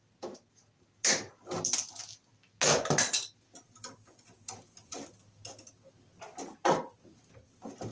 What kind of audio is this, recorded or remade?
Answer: recorded